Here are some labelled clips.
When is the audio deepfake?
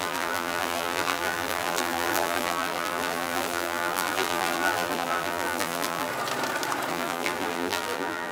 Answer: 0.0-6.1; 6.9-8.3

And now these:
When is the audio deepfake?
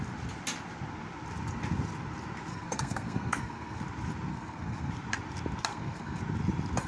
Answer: 2.5-3.8; 4.3-4.9; 5.7-6.2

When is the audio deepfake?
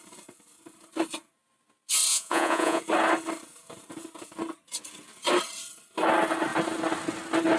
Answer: 2.1-2.8